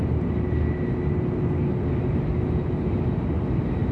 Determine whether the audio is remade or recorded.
recorded